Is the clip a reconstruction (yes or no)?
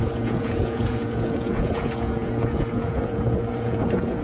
yes